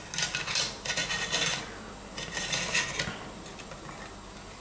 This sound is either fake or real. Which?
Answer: real